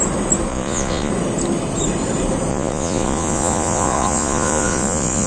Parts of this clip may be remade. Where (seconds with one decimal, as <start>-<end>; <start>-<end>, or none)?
0.5-1.1; 2.5-5.3